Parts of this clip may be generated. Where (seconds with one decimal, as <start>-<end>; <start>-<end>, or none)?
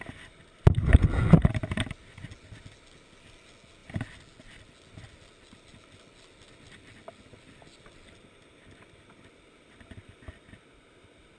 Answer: none